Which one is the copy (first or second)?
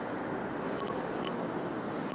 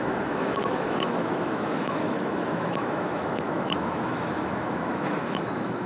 second